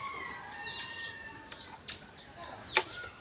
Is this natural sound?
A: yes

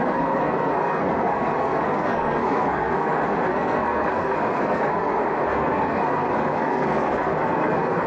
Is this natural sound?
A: no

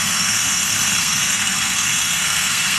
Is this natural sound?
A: no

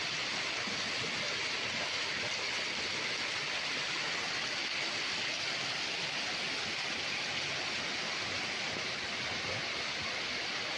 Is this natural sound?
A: yes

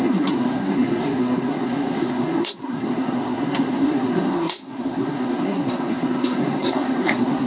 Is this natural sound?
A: no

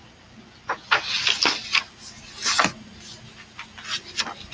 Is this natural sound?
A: yes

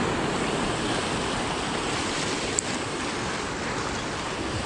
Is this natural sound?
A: yes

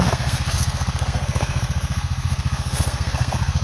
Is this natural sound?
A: no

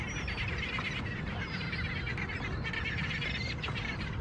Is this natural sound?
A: yes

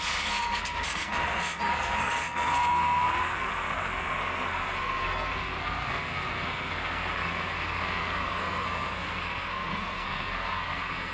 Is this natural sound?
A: no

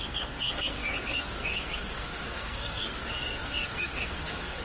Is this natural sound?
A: no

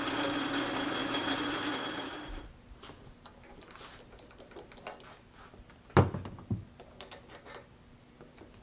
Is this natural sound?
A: yes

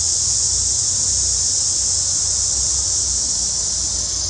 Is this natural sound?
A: yes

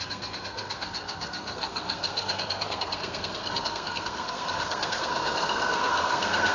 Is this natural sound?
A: no